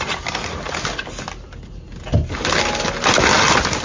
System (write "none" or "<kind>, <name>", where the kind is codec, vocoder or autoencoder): none